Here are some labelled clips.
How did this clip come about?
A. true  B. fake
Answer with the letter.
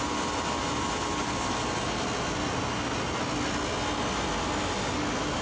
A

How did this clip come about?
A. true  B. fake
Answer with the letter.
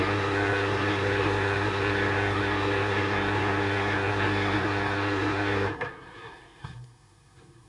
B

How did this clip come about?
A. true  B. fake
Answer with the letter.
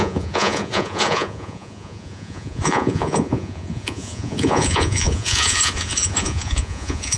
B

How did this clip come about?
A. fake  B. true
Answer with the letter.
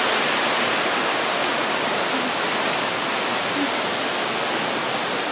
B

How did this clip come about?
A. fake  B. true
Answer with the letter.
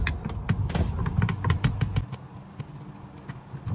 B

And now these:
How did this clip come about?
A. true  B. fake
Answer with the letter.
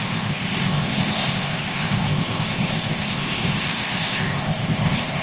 B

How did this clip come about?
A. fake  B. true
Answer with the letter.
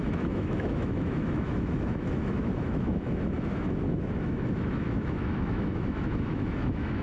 A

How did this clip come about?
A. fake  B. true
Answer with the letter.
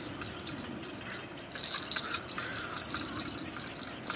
B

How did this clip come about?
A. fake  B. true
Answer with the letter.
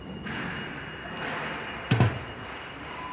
A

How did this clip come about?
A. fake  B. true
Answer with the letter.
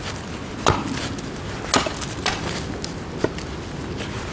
B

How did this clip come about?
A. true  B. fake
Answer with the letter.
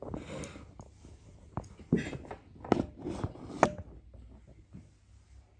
A